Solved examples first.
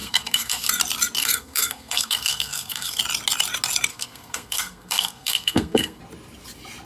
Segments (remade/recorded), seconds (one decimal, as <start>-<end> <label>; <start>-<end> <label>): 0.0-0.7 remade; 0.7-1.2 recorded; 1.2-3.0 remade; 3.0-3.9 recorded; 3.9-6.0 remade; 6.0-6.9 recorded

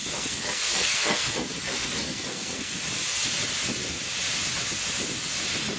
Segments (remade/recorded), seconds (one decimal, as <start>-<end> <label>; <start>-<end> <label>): 0.0-2.8 remade; 2.8-5.8 recorded

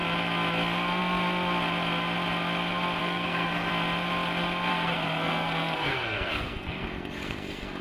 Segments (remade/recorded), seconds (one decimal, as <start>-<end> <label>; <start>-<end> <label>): 0.0-3.0 recorded; 3.0-3.7 remade; 3.7-4.7 recorded; 4.7-7.8 remade

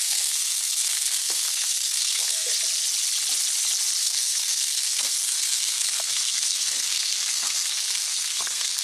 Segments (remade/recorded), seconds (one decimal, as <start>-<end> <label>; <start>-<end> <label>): 0.0-2.5 remade; 2.5-4.0 recorded; 4.0-8.8 remade